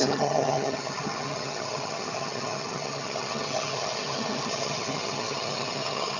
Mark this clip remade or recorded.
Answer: remade